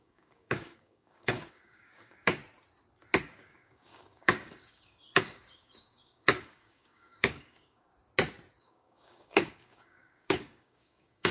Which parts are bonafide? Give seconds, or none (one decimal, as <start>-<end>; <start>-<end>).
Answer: 2.4-3.2; 7.9-8.6